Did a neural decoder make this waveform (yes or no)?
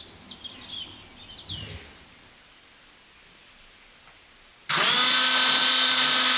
no